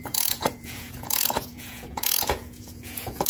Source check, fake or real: fake